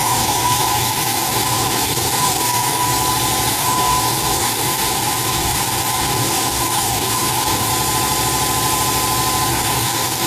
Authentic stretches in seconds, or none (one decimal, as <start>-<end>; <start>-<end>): 2.9-3.5; 7.7-9.5